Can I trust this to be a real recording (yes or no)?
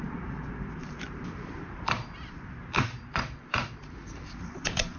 no